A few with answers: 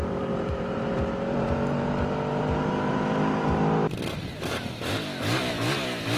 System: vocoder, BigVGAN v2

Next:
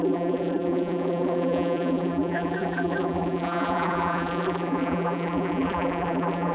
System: vocoder, BigVGAN v2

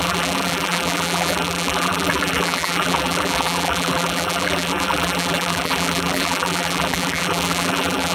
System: vocoder, BigVGAN v2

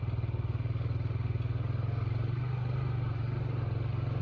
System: none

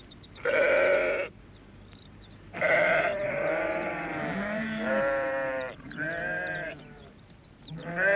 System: vocoder, BigVGAN v2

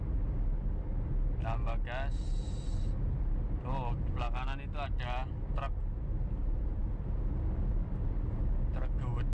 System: none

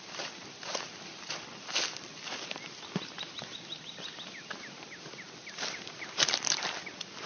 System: vocoder, BigVGAN v2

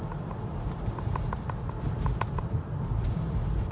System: vocoder, BigVGAN v2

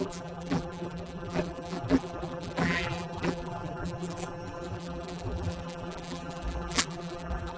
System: vocoder, BigVGAN v2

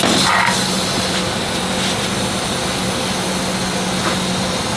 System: none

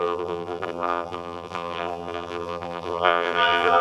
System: vocoder, BigVGAN v2